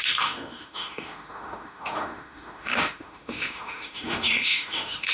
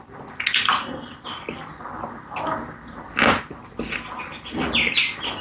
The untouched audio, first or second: second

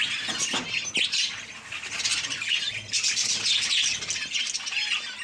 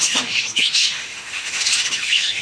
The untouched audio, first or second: first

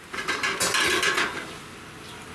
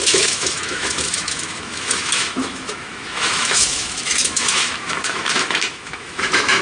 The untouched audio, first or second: first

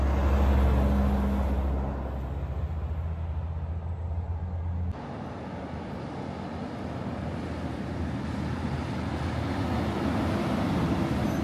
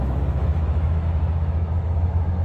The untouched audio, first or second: first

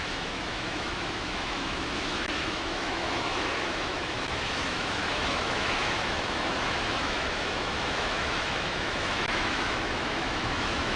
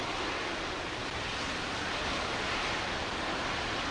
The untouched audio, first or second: second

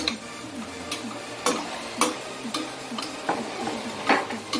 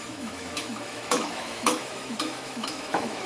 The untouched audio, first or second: first